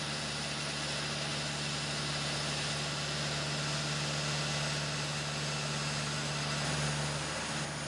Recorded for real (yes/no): yes